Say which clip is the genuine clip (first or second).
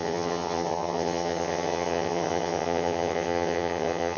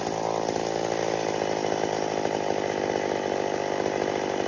second